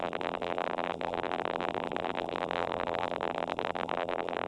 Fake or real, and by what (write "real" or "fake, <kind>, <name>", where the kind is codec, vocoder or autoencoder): fake, vocoder, BigVGAN v2